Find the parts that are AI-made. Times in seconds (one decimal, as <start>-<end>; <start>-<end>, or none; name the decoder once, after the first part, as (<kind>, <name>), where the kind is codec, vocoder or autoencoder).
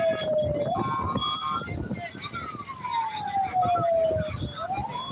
none